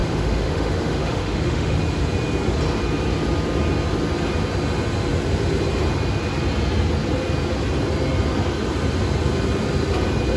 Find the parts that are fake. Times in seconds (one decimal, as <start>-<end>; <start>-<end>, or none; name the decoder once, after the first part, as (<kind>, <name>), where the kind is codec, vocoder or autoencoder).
0.0-1.8 (autoencoder, DAC-VAE)